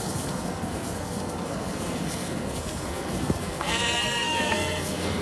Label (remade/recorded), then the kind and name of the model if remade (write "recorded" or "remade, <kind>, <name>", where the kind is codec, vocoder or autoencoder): remade, codec, SNAC